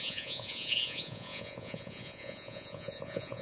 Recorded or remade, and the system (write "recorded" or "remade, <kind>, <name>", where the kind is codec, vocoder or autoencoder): remade, vocoder, Vocos